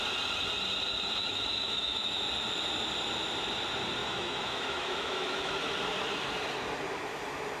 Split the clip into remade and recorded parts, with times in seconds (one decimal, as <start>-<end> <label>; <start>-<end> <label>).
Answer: 0.0-1.2 recorded; 1.2-2.2 remade; 2.2-4.0 recorded; 4.0-5.5 remade; 5.5-7.6 recorded